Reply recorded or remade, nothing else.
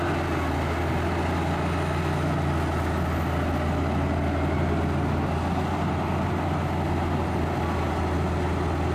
recorded